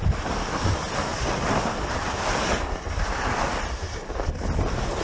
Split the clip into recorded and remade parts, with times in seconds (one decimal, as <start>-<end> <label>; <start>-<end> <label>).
0.0-5.0 recorded